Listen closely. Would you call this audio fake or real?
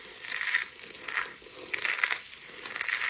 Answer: real